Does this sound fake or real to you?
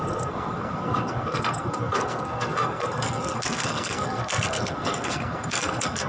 fake